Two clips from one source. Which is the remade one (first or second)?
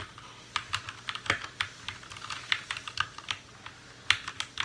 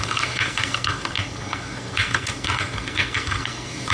second